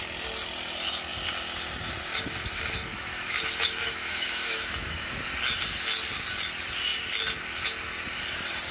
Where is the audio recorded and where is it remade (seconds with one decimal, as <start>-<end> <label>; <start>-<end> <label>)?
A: 0.0-2.9 recorded; 2.9-5.2 remade; 5.2-8.7 recorded